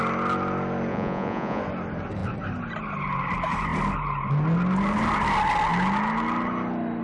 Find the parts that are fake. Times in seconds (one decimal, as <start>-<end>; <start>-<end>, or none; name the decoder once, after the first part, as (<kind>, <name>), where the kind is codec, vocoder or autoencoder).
0.9-1.6 (vocoder, Vocos)